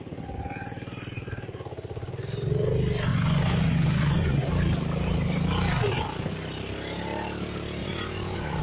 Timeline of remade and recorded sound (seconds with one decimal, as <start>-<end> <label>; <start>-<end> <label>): 0.0-3.1 recorded; 3.1-4.5 remade; 4.5-7.8 recorded; 7.8-8.6 remade